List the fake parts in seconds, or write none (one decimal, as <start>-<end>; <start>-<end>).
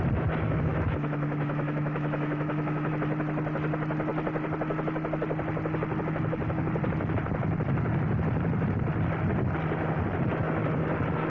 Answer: 0.7-2.9